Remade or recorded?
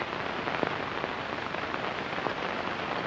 recorded